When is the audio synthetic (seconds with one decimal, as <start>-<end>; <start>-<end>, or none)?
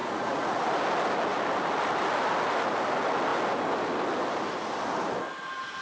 0.0-0.6